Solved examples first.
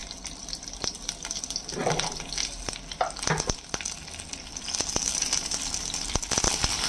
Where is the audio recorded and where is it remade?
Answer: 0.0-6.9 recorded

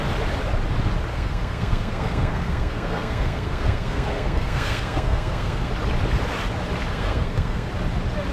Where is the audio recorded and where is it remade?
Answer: 0.0-1.1 recorded; 1.1-5.7 remade; 5.7-6.9 recorded; 6.9-7.7 remade; 7.7-8.3 recorded

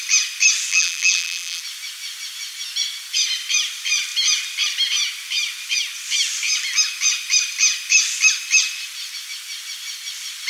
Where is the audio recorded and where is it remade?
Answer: 0.0-0.7 recorded; 0.7-1.6 remade; 1.6-10.5 recorded

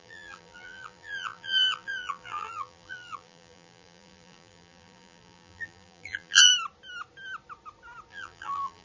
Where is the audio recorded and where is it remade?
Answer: 0.0-6.5 remade; 6.5-8.1 recorded; 8.1-8.8 remade

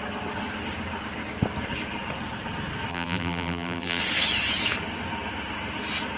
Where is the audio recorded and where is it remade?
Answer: 0.0-2.9 recorded; 2.9-4.0 remade; 4.0-6.2 recorded

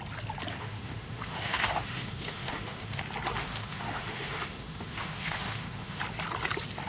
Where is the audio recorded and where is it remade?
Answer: 0.0-0.6 recorded; 0.6-3.0 remade; 3.0-3.4 recorded; 3.4-6.0 remade; 6.0-6.9 recorded